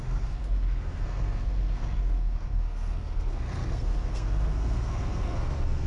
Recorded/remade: remade